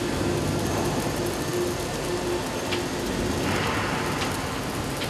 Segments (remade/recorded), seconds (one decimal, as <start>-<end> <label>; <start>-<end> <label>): 0.0-5.1 recorded